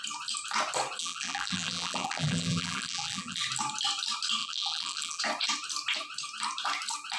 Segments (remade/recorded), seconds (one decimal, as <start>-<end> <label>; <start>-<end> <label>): 0.0-1.0 recorded; 1.0-3.4 remade; 3.4-4.4 recorded; 4.4-5.2 remade; 5.2-7.2 recorded